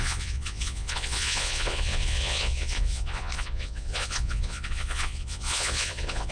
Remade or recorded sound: remade